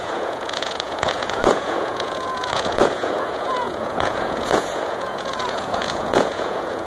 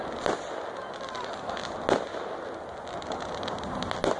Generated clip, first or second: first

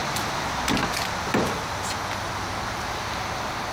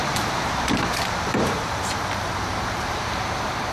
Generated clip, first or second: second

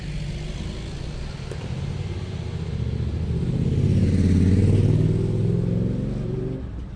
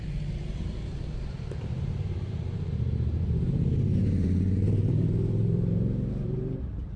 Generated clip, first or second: second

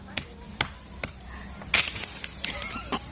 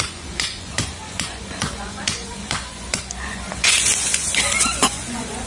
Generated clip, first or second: second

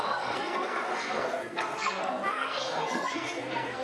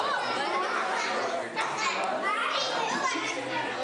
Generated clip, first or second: first